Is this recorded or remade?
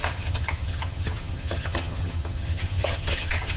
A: remade